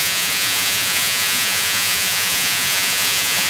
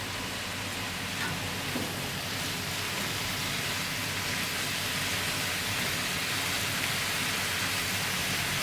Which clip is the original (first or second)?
second